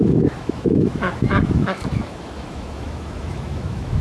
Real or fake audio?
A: fake